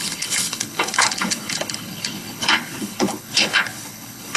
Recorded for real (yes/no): no